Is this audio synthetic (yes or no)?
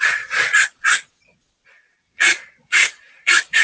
yes